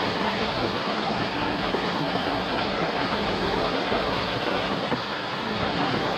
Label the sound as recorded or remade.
remade